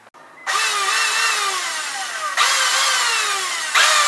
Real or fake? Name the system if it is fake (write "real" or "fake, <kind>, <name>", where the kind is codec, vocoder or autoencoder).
real